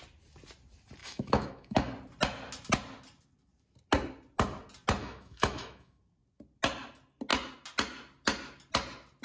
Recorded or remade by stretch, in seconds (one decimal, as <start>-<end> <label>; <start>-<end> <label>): 0.0-1.0 recorded; 1.0-1.9 remade; 1.9-5.0 recorded; 5.0-6.0 remade; 6.0-9.2 recorded

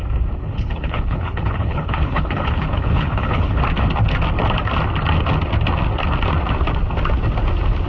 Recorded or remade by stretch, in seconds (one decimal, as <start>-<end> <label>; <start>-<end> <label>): 0.0-0.4 recorded; 0.4-3.6 remade; 3.6-7.9 recorded

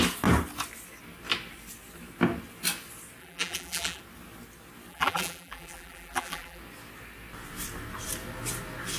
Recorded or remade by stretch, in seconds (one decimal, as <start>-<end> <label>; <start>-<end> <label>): 0.0-3.2 recorded; 3.2-4.0 remade; 4.0-4.9 recorded; 4.9-6.6 remade; 6.6-9.0 recorded

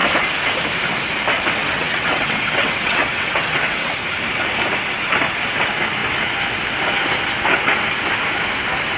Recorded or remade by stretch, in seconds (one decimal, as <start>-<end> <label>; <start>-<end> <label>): 0.0-1.6 recorded; 1.6-3.9 remade; 3.9-9.0 recorded

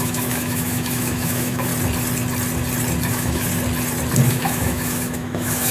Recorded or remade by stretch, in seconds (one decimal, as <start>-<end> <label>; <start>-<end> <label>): 0.0-1.7 remade; 1.7-3.1 recorded; 3.1-3.5 remade; 3.5-4.3 recorded; 4.3-5.7 remade

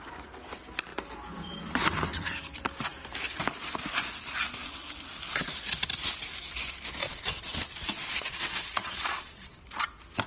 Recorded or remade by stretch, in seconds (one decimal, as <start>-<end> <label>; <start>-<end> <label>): 0.0-7.0 recorded; 7.0-9.6 remade; 9.6-10.3 recorded

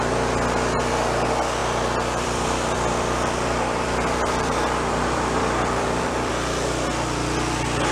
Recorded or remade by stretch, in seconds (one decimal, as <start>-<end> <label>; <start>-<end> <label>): 0.0-1.6 recorded; 1.6-6.3 remade; 6.3-7.9 recorded